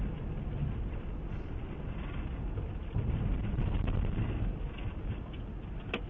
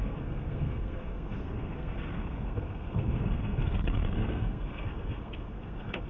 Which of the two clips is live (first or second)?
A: first